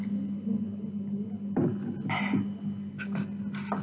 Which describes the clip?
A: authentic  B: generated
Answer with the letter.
A